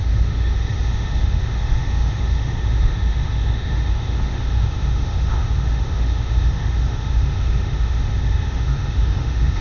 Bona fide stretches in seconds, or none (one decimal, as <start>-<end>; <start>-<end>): none